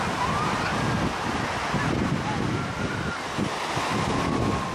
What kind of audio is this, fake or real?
real